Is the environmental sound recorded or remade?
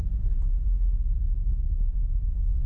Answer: recorded